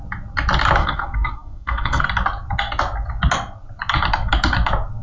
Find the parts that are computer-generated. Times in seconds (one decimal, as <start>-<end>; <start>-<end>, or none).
0.8-2.0